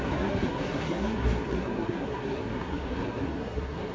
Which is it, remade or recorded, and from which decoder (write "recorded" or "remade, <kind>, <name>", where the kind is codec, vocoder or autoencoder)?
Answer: remade, codec, SNAC